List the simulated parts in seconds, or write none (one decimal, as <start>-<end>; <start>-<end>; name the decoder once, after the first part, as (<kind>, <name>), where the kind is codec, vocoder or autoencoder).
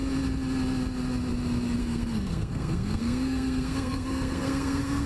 1.8-5.1 (codec, SNAC)